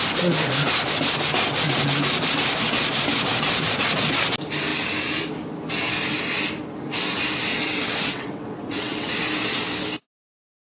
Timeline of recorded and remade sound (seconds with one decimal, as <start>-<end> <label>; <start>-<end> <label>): 0.0-7.5 recorded; 7.5-9.1 remade; 9.1-10.6 recorded